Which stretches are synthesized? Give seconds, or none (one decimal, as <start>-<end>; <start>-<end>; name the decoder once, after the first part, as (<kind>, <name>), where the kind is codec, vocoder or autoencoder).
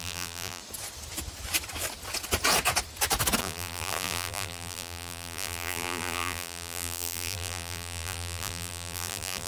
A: 0.0-0.6 (vocoder, BigVGAN v2); 3.4-9.5